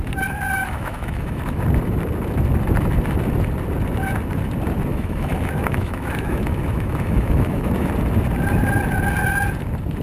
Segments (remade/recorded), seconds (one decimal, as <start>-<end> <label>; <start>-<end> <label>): 0.0-0.6 recorded; 0.6-1.6 remade; 1.6-4.9 recorded; 4.9-7.9 remade; 7.9-10.0 recorded